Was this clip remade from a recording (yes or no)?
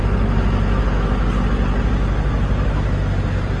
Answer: no